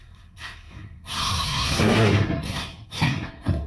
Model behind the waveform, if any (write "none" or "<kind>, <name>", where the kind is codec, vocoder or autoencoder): codec, SNAC